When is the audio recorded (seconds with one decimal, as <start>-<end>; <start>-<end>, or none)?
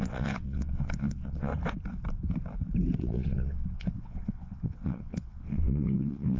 1.5-3.0